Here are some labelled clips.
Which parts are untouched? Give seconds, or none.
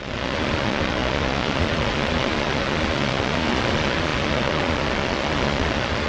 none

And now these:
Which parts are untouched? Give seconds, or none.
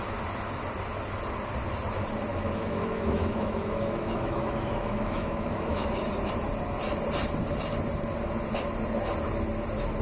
0.0-2.3; 5.9-10.0